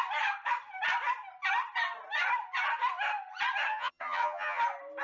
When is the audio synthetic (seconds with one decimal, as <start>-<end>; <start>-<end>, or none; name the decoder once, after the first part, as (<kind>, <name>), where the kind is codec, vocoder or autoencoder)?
3.7-4.6 (vocoder, HiFi-GAN)